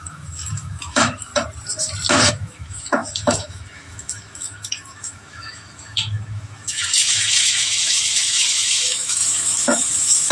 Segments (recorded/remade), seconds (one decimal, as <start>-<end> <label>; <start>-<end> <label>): 0.0-1.3 remade; 1.3-2.3 recorded; 2.3-10.3 remade